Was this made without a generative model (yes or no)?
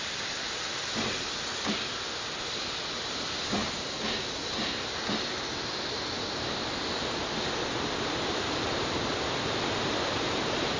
yes